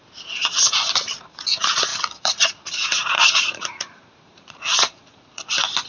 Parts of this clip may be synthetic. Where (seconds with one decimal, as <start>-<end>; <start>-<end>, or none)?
1.9-5.4

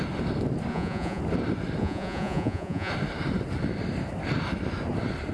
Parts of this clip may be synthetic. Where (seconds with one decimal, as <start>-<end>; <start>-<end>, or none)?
0.7-1.2; 1.8-2.9

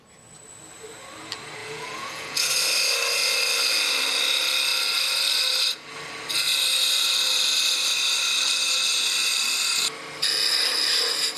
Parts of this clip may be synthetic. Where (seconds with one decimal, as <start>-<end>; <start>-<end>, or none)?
1.6-2.5